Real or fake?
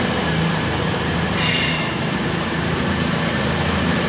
fake